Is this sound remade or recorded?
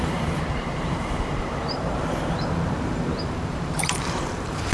remade